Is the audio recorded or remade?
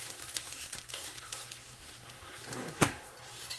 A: remade